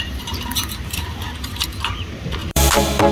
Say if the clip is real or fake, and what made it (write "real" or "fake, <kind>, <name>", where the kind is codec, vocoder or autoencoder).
fake, vocoder, BigVGAN v2